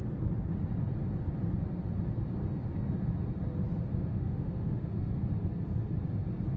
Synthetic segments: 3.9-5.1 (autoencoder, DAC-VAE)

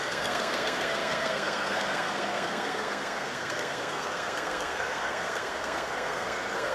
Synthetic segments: 0.0-6.7 (codec, SNAC)

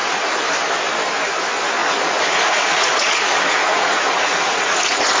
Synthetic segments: 0.0-0.5 (vocoder, Vocos); 1.8-5.2

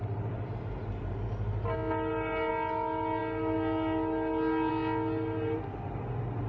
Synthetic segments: none